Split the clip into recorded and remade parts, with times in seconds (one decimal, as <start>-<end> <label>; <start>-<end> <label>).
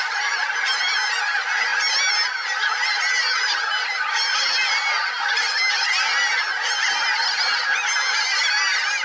0.0-9.0 recorded